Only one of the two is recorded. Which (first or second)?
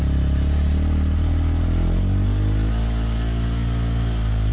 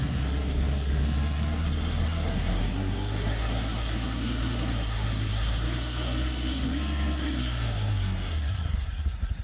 first